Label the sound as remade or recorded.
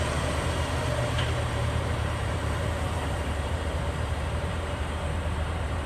remade